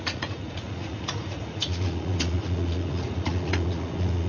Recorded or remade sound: remade